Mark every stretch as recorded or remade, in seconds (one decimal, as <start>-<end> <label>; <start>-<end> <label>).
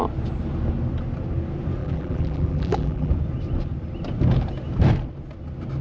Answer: 0.0-1.8 recorded; 1.8-3.1 remade; 3.1-5.8 recorded